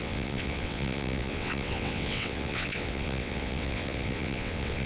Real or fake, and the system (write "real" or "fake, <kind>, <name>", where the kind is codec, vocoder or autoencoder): fake, vocoder, WaveNeXt